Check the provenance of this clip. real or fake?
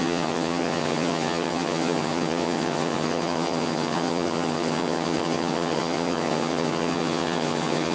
fake